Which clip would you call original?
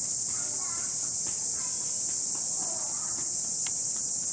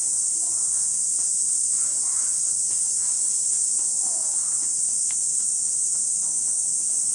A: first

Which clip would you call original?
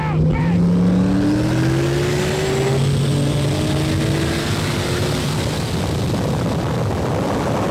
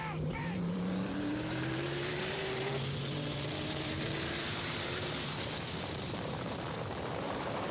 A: first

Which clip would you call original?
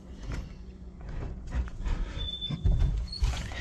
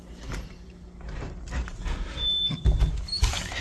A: second